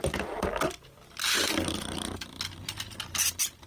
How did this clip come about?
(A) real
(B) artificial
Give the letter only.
A